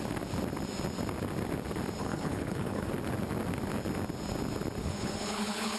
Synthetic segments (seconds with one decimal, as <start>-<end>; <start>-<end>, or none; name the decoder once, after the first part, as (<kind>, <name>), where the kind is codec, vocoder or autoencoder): 2.0-2.9 (codec, HILCodec); 4.8-5.8